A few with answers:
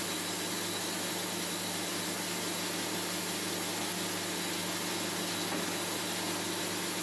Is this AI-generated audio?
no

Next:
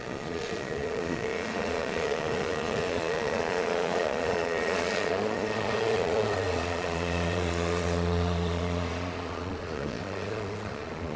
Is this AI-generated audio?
yes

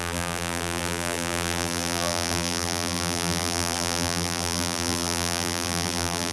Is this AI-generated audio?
yes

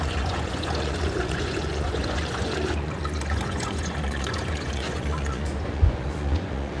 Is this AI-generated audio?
yes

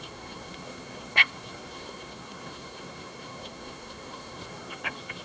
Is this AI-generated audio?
yes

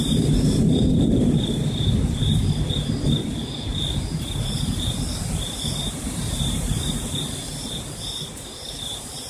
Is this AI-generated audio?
yes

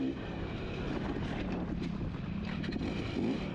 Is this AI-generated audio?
no